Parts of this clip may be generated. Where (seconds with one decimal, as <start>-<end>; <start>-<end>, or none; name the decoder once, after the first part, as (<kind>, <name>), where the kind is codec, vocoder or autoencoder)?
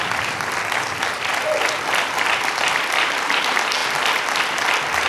none